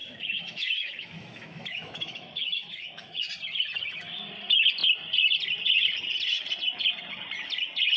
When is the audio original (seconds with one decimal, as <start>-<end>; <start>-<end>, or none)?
3.3-8.0